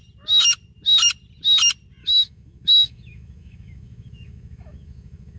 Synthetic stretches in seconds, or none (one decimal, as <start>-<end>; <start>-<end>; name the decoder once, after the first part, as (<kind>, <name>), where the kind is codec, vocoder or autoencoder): 2.0-5.4 (autoencoder, DAC-VAE)